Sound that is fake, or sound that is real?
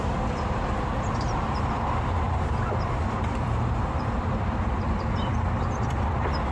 fake